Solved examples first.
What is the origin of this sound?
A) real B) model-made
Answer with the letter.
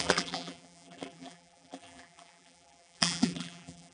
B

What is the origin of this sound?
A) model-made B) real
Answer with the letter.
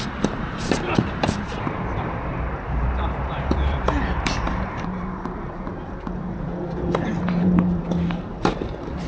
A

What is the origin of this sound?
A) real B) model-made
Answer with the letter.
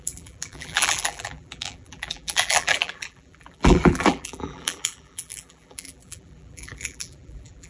B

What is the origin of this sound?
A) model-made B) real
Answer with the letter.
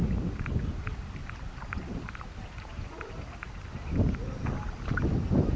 B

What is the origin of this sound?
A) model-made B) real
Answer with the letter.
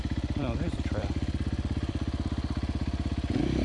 A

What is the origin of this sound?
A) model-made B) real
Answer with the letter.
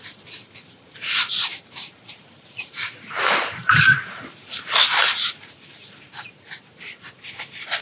A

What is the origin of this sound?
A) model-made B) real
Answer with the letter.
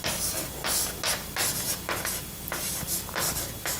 B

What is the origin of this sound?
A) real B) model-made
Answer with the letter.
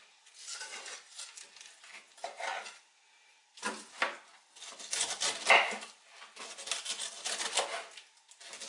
A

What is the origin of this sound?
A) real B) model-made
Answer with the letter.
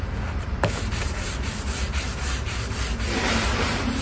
B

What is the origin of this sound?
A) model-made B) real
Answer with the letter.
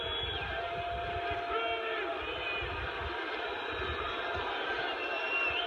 B